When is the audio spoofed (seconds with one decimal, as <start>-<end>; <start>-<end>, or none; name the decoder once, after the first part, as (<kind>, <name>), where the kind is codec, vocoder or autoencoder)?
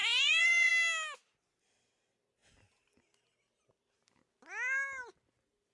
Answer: 0.0-0.7 (vocoder, Vocos)